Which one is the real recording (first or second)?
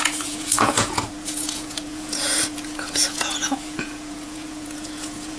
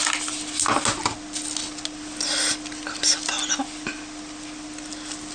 second